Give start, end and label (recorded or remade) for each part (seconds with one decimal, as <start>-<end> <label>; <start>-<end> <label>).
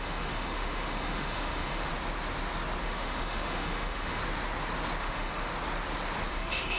0.0-1.9 remade; 1.9-2.8 recorded; 2.8-4.2 remade; 4.2-5.0 recorded; 5.0-5.5 remade; 5.5-6.3 recorded; 6.3-6.8 remade